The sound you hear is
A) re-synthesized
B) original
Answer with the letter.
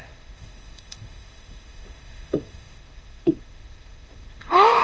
A